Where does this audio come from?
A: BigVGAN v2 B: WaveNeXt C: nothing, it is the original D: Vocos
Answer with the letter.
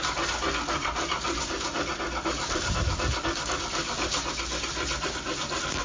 C